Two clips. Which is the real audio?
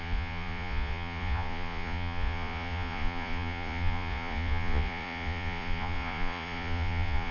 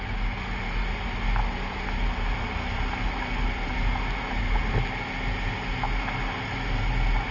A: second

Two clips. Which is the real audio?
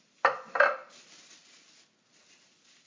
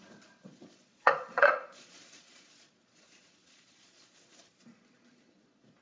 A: first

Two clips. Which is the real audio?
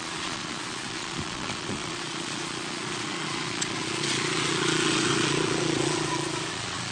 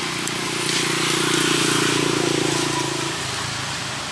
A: second